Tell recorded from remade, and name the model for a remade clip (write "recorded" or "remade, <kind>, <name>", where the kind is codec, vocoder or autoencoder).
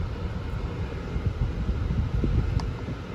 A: recorded